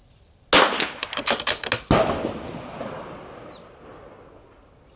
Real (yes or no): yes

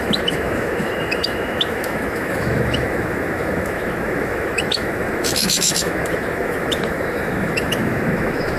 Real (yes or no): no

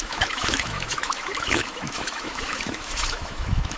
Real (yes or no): no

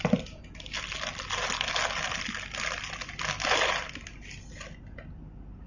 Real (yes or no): yes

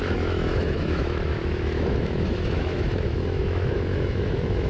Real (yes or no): no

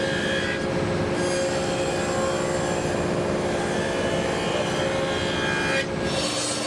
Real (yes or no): yes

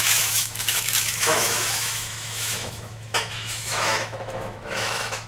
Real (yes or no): no